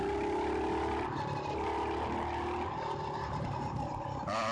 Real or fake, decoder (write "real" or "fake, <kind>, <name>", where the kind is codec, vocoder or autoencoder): real